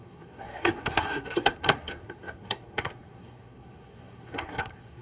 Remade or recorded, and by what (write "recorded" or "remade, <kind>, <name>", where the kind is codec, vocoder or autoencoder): remade, codec, SNAC